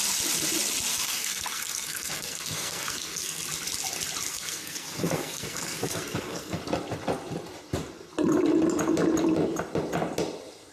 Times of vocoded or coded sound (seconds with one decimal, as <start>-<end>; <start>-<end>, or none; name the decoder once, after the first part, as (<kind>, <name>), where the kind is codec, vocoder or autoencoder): 0.9-3.4 (codec, SNAC); 4.3-6.6